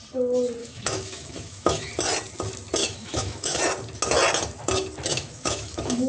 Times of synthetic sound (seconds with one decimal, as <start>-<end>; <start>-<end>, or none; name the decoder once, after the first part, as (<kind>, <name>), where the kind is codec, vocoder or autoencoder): 0.6-1.9 (autoencoder, DAC-VAE); 2.8-3.6; 5.1-6.1